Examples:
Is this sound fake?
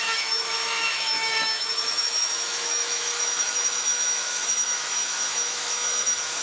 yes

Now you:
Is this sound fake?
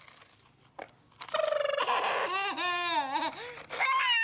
no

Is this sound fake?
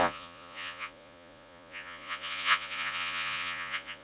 yes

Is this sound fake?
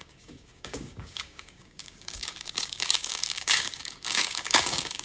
yes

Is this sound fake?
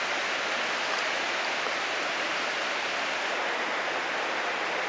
no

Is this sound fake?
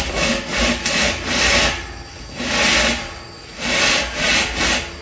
no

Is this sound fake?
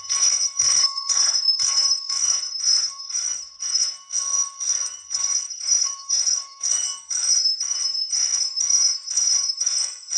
yes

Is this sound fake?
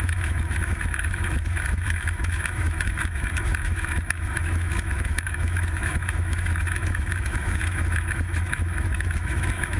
yes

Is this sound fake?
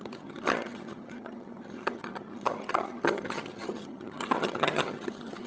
yes